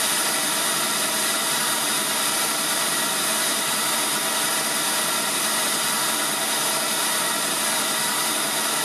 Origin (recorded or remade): recorded